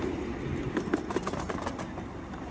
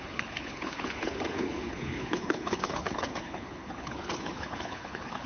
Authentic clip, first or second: first